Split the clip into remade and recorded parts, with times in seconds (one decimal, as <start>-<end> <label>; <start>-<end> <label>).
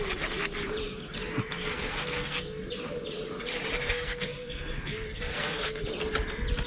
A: 0.0-1.4 recorded; 1.4-2.6 remade; 2.6-3.8 recorded; 3.8-5.8 remade; 5.8-6.7 recorded